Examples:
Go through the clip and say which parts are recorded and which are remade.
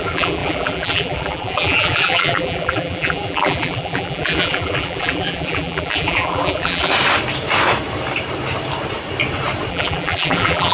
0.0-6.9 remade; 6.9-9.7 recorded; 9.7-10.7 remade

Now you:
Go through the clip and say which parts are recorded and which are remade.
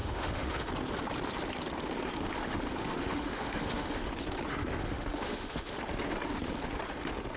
0.0-0.7 remade; 0.7-2.8 recorded; 2.8-3.9 remade; 3.9-4.8 recorded; 4.8-5.8 remade; 5.8-7.4 recorded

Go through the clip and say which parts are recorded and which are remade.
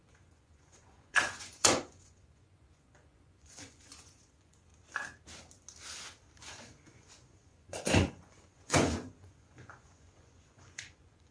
0.0-4.7 remade; 4.7-6.4 recorded; 6.4-11.3 remade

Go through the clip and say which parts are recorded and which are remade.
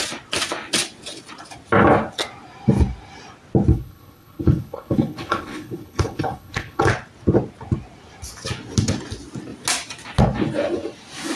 0.0-3.7 recorded; 3.7-6.9 remade; 6.9-11.4 recorded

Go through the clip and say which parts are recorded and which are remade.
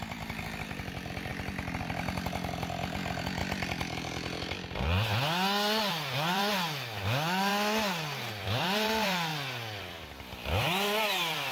0.0-1.3 remade; 1.3-1.8 recorded; 1.8-3.4 remade; 3.4-5.9 recorded; 5.9-7.5 remade; 7.5-8.4 recorded; 8.4-9.3 remade; 9.3-9.8 recorded; 9.8-11.5 remade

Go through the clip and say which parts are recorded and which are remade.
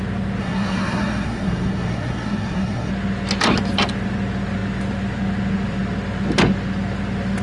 0.0-0.4 recorded; 0.4-2.9 remade; 2.9-7.4 recorded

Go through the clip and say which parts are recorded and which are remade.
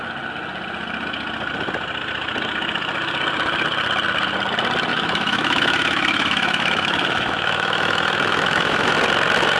0.0-4.9 recorded; 4.9-8.9 remade; 8.9-9.6 recorded